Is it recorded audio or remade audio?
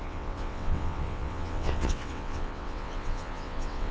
remade